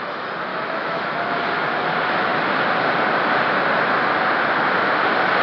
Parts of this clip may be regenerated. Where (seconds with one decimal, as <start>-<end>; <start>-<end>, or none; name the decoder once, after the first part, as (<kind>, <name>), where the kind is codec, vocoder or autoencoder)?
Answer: 0.5-1.4 (autoencoder, DAC-VAE)